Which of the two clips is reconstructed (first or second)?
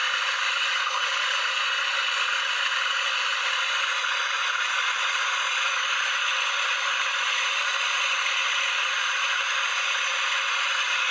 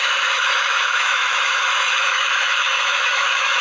second